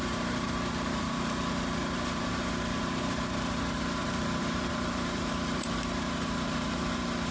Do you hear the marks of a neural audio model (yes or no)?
yes